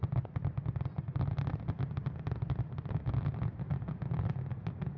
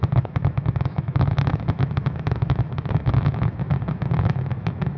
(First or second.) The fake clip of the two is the second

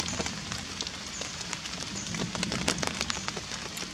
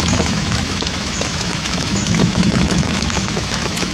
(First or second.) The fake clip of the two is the second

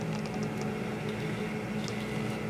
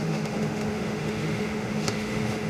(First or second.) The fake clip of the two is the second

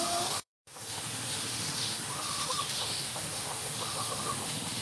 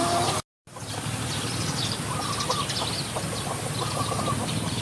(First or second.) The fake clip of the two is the first